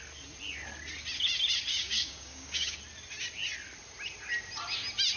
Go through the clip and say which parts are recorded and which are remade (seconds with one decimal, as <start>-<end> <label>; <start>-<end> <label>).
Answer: 0.0-1.7 recorded; 1.7-2.8 remade; 2.8-5.2 recorded